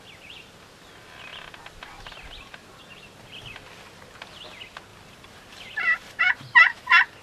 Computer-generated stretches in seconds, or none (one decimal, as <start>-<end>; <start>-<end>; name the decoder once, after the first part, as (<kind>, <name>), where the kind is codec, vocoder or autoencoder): none